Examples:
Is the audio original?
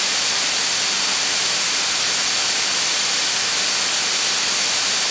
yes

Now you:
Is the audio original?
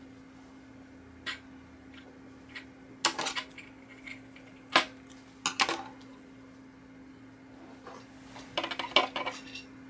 yes